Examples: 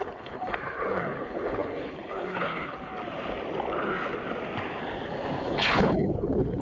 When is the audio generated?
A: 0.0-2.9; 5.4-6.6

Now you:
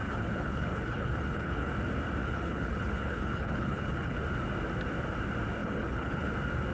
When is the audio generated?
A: 0.0-1.7; 2.2-4.2; 5.6-6.3

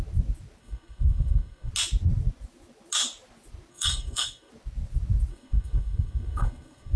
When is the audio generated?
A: 0.6-1.7; 3.7-4.5; 5.3-7.0

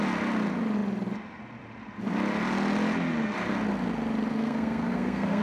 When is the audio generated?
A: 4.3-5.4

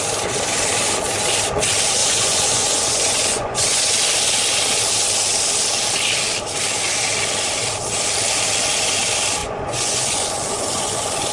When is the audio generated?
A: 2.0-3.9; 9.4-11.3

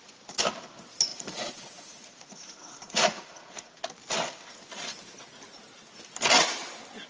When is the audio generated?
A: 1.1-3.8

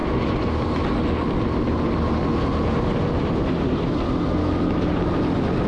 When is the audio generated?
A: 4.4-5.0

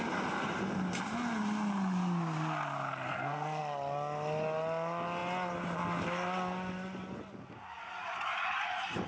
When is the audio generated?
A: 3.1-3.6